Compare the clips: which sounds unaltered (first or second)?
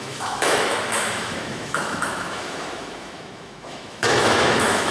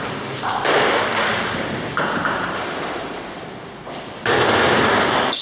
second